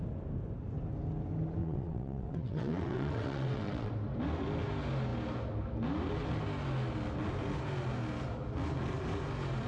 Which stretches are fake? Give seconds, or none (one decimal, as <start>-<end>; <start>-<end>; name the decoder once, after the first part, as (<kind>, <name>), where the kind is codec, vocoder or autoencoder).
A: 1.6-3.9 (vocoder, WaveNeXt)